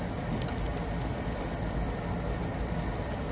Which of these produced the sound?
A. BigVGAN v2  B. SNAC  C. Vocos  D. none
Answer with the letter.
D